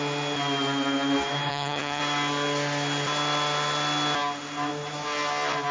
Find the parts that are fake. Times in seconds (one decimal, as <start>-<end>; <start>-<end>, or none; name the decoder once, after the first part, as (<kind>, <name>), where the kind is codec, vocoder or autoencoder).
1.5-2.0 (vocoder, HiFi-GAN)